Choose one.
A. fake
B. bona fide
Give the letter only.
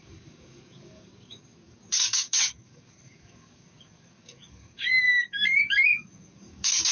A